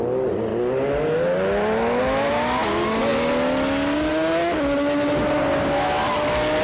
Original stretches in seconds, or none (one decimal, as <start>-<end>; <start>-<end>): 0.0-6.6